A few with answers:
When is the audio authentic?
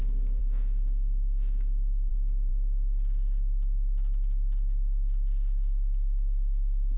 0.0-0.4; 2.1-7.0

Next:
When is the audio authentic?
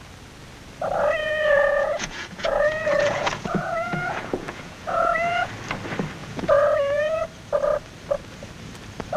0.0-1.2; 5.5-6.2; 7.2-9.2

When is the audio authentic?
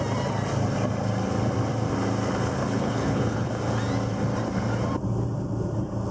0.0-2.6; 3.5-6.1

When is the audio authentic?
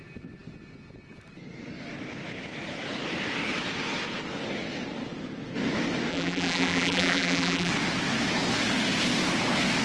0.0-6.1; 7.7-9.8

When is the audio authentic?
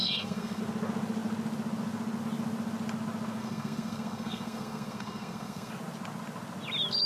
0.6-3.4; 5.7-7.1